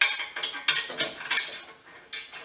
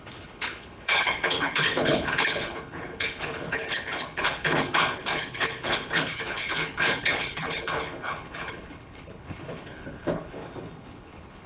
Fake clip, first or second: second